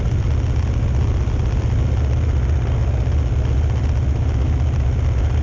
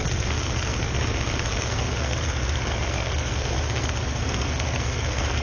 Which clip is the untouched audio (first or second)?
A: first